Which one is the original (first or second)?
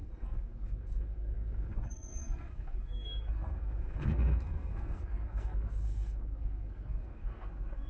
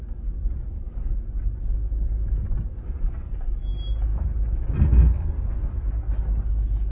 second